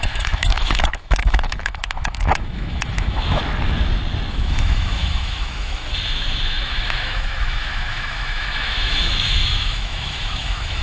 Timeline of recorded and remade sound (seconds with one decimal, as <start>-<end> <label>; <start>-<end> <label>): 0.0-3.4 remade; 3.4-4.3 recorded; 4.3-10.8 remade